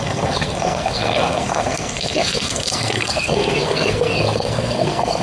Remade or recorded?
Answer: remade